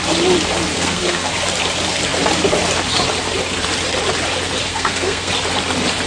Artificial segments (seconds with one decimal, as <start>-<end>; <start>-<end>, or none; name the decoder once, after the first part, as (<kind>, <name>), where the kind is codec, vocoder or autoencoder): 0.7-1.3 (codec, SNAC); 4.7-5.3